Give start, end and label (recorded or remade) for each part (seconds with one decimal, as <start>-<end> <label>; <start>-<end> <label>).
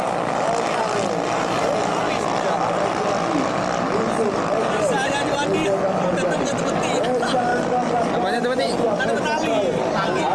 0.0-10.3 recorded